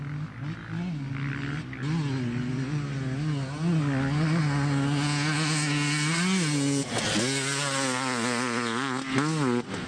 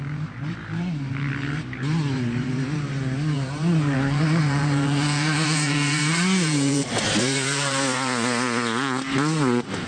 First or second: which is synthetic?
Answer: second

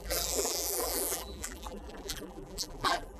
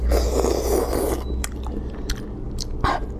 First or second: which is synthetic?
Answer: first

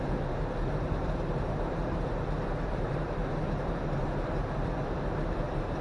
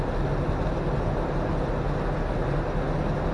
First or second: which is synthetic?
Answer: first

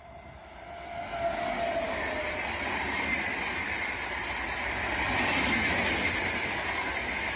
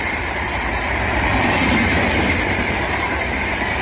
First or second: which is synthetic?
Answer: second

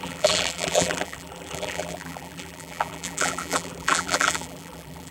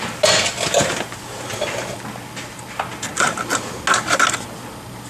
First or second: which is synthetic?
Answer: first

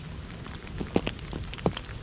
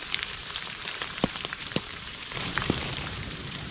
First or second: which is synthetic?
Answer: second